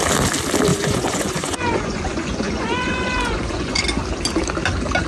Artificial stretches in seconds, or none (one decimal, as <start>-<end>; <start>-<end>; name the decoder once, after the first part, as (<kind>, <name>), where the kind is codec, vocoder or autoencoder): 0.7-3.8 (vocoder, Vocos)